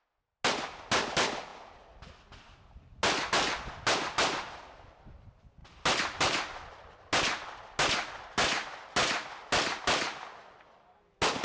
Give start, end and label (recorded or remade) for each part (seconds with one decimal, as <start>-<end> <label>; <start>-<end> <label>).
0.0-11.4 recorded